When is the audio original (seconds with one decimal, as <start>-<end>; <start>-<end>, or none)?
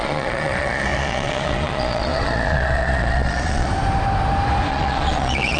3.7-4.7